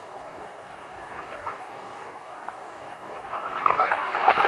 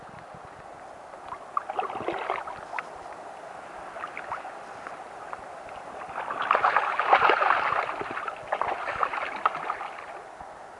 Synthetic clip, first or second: first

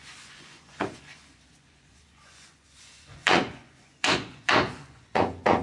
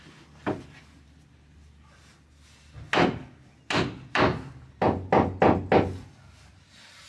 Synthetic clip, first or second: first